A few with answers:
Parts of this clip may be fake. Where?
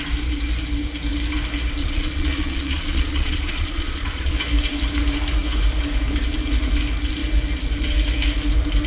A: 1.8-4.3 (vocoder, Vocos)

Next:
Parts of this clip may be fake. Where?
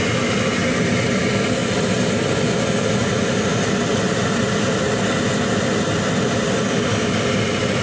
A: none